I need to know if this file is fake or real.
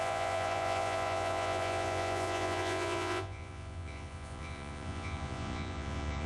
fake